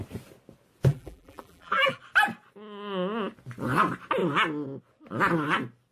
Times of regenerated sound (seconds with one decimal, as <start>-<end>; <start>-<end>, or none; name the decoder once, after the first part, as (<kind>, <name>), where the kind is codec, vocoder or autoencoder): 0.9-2.0 (vocoder, BigVGAN v2)